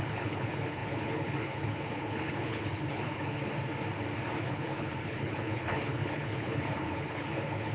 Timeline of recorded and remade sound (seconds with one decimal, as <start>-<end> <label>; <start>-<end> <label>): 0.0-3.4 remade; 3.4-4.4 recorded; 4.4-7.7 remade